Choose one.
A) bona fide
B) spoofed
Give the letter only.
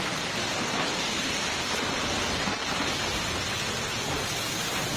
A